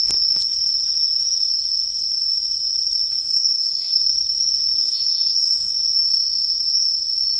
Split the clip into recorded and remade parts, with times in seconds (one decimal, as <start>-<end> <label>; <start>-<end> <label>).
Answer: 0.0-3.2 recorded; 3.2-4.0 remade; 4.0-4.8 recorded; 4.8-5.7 remade; 5.7-7.4 recorded